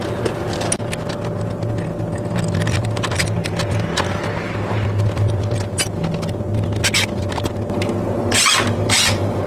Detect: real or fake real